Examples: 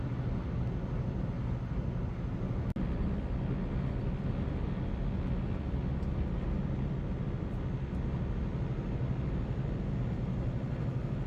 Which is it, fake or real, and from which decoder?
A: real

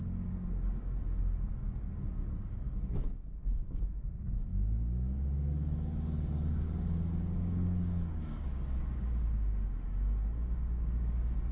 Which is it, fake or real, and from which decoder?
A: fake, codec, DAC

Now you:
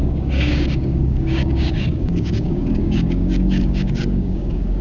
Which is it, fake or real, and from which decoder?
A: fake, codec, DAC